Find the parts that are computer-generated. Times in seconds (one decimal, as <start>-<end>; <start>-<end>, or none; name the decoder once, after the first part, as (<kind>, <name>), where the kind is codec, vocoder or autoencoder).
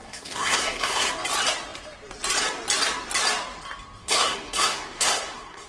0.0-1.1 (codec, SNAC); 4.0-5.7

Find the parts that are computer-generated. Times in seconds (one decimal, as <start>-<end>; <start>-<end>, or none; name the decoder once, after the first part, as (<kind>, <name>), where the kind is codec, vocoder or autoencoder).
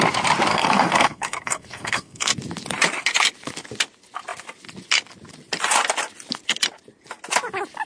0.5-2.4 (codec, SNAC)